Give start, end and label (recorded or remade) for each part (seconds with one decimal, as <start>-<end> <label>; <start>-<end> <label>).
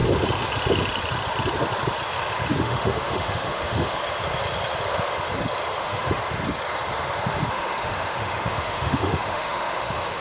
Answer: 0.0-2.6 recorded; 2.6-4.0 remade; 4.0-5.8 recorded; 5.8-6.2 remade; 6.2-7.5 recorded; 7.5-10.2 remade